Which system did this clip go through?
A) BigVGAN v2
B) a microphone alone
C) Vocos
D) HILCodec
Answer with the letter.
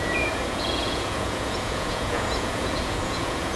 C